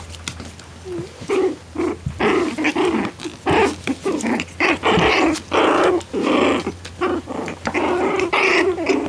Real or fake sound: real